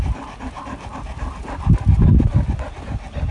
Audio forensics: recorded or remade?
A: recorded